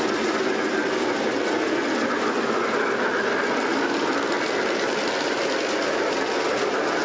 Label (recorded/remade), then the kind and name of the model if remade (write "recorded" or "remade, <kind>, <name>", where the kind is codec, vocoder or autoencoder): recorded